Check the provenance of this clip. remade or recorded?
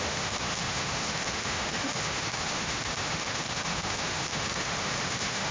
remade